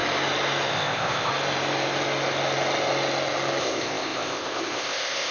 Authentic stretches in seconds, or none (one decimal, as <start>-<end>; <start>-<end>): 0.0-0.7; 1.3-3.6